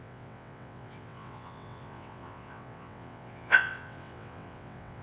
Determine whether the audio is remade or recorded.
remade